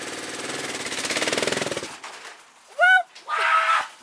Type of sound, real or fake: real